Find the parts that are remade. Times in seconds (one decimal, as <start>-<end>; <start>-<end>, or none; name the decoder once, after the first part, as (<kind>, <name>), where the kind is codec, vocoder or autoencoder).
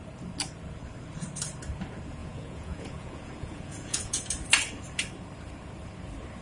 2.2-4.2 (vocoder, Vocos)